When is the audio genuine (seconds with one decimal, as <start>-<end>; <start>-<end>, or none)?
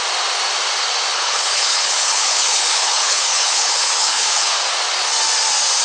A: 0.0-1.1; 4.6-5.8